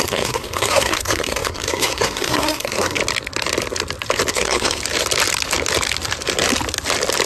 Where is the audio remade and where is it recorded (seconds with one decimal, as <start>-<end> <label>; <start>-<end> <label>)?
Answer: 0.0-3.0 remade; 3.0-4.3 recorded; 4.3-4.8 remade; 4.8-7.3 recorded